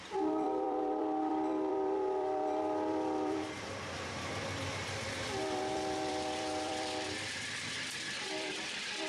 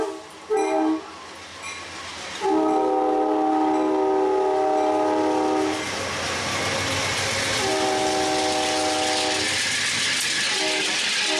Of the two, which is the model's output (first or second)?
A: first